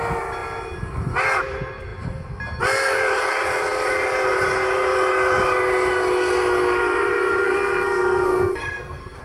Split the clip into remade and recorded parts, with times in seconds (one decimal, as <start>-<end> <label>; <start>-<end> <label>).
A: 0.0-7.4 recorded; 7.4-9.2 remade